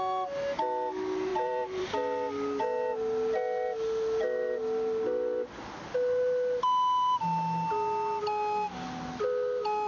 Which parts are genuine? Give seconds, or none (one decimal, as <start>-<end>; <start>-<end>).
0.0-1.3; 1.9-9.9